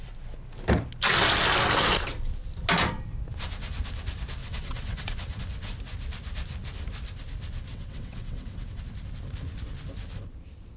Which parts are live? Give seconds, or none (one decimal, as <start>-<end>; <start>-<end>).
0.0-4.4; 5.4-7.7; 8.8-10.8